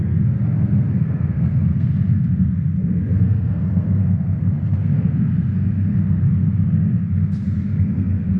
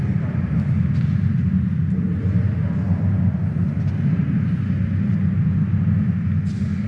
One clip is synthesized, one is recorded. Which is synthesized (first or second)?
first